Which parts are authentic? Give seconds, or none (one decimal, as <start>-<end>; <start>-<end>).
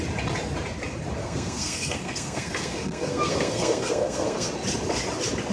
0.0-1.2; 4.5-5.5